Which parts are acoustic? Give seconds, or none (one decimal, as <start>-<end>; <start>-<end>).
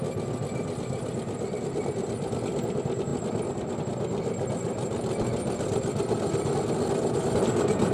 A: 0.0-7.9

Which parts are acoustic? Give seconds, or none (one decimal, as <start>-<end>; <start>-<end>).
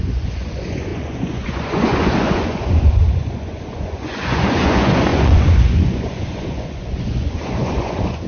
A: none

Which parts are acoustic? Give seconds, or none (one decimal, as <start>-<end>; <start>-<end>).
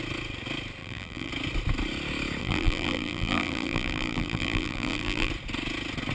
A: 0.0-0.8; 1.3-2.4; 5.3-6.1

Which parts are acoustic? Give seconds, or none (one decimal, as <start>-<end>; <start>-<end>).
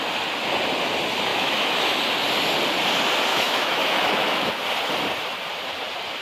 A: 0.0-1.3; 1.8-3.3; 4.5-6.2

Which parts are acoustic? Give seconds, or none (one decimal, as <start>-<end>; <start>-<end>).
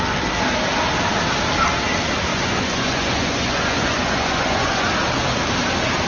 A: 0.0-2.3; 4.9-6.1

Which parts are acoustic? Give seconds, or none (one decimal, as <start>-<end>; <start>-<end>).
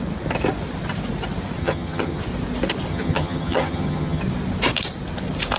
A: 0.0-1.6; 2.2-2.9; 4.2-5.6